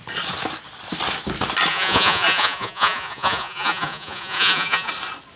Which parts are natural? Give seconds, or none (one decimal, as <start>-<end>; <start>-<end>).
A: 0.0-1.7; 4.9-5.4